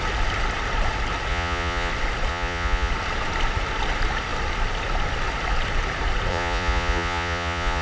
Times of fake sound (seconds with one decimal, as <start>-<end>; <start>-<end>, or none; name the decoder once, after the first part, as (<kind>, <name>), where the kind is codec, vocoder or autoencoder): 1.3-1.9 (vocoder, Vocos); 2.3-2.9; 6.3-7.8